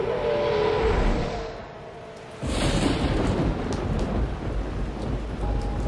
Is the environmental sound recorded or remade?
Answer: recorded